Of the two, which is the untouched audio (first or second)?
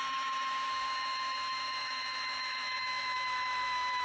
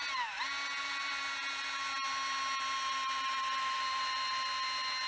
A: second